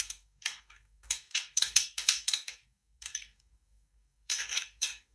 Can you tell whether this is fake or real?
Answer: fake